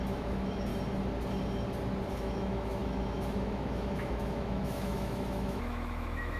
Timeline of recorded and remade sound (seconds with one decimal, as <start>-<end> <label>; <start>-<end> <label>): 0.0-0.7 remade; 0.7-2.1 recorded; 2.1-6.4 remade

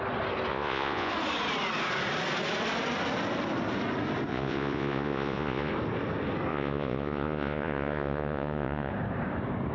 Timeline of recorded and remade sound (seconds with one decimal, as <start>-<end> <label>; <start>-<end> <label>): 0.0-0.5 recorded; 0.5-1.1 remade; 1.1-4.3 recorded; 4.3-5.7 remade; 5.7-6.5 recorded; 6.5-8.9 remade; 8.9-9.7 recorded